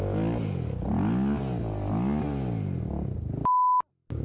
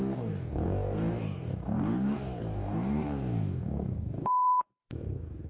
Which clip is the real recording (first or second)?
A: first